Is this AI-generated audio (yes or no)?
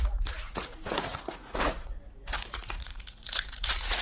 yes